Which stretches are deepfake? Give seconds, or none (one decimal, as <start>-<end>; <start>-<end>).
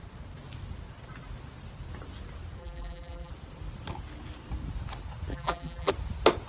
2.6-3.3; 5.3-5.9